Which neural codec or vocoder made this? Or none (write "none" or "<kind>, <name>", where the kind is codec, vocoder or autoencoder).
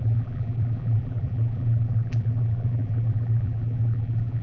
vocoder, BigVGAN v2